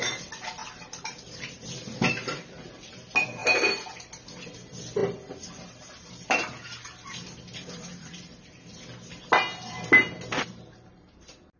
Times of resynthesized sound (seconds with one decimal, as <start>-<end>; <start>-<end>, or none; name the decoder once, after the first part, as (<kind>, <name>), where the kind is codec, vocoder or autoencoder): none